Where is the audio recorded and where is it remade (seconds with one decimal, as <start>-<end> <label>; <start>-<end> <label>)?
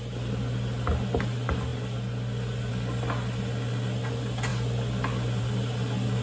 0.0-6.2 recorded